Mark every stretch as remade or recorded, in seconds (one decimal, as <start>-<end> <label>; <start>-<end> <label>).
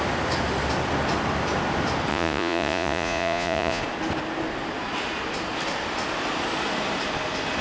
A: 0.0-2.1 recorded; 2.1-3.8 remade; 3.8-7.6 recorded